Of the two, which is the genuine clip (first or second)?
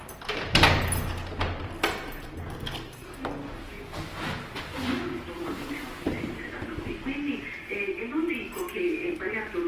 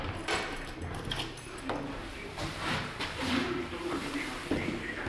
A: first